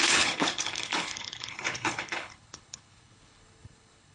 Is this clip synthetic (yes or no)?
yes